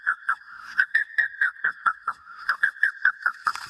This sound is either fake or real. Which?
fake